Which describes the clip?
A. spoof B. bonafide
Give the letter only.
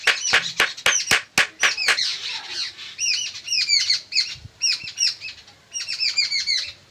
B